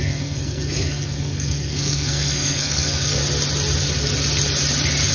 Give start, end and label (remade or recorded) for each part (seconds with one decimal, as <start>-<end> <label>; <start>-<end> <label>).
0.0-3.2 remade; 3.2-5.1 recorded

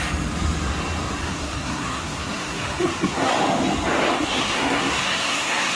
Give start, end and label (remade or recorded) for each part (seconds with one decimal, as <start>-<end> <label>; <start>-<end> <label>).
0.0-1.2 recorded; 1.2-3.3 remade; 3.3-4.1 recorded; 4.1-5.8 remade

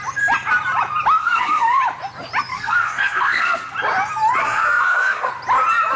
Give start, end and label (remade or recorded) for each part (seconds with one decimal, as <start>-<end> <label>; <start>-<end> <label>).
0.0-1.2 recorded; 1.2-1.8 remade; 1.8-2.5 recorded; 2.5-3.7 remade; 3.7-4.4 recorded; 4.4-5.3 remade; 5.3-6.0 recorded